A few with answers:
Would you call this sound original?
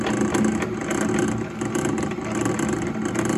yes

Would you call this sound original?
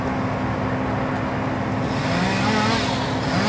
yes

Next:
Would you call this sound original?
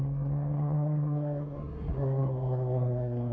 no